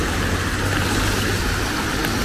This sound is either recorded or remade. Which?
recorded